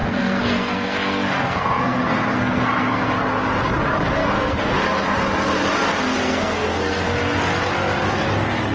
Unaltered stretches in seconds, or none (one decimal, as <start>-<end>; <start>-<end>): 3.1-4.2; 4.8-6.2; 7.4-8.7